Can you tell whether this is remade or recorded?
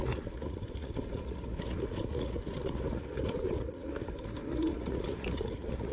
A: remade